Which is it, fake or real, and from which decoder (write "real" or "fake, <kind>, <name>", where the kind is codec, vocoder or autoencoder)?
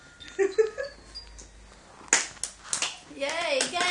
real